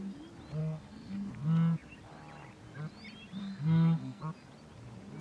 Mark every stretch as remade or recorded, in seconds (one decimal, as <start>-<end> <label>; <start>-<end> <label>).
0.0-0.6 recorded; 0.6-1.3 remade; 1.3-3.4 recorded; 3.4-4.2 remade; 4.2-5.2 recorded